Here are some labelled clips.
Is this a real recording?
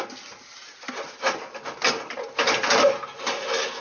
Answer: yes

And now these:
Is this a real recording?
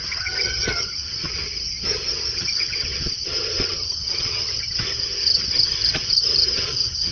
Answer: no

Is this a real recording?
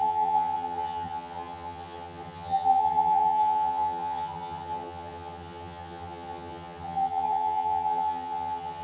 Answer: no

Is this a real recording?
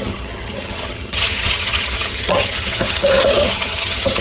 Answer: no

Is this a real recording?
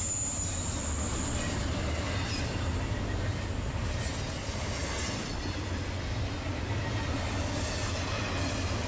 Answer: yes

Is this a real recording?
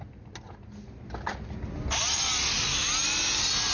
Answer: yes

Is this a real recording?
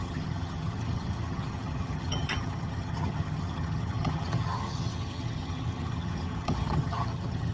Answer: no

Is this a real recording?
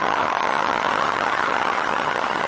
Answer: no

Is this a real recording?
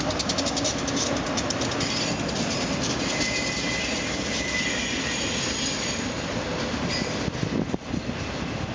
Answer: yes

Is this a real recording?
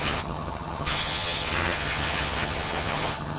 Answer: no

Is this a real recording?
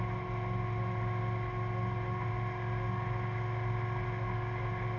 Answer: yes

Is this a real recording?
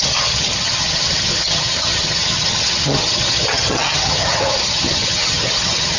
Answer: no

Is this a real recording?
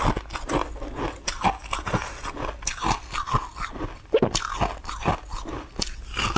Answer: yes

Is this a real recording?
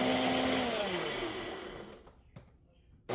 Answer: yes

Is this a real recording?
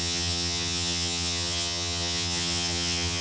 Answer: no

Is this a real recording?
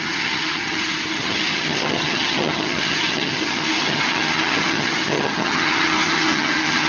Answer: no